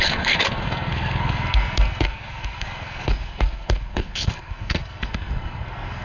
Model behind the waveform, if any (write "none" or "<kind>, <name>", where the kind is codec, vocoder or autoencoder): codec, SNAC